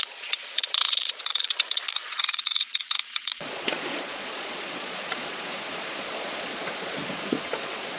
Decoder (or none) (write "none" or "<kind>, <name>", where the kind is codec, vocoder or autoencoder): vocoder, Vocos